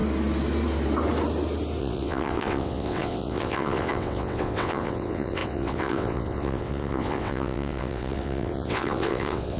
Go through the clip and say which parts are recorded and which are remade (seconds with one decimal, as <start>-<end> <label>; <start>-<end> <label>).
0.0-1.8 recorded; 1.8-9.6 remade